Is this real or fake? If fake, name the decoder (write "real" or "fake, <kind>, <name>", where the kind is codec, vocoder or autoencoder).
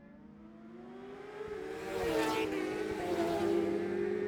real